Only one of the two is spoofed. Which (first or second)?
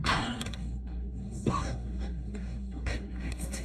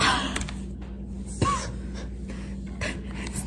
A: first